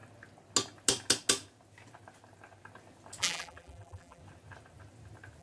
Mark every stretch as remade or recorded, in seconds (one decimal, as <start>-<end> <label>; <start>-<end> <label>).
0.0-3.2 recorded; 3.2-4.2 remade; 4.2-5.4 recorded